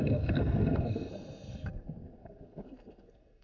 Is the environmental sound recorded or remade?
remade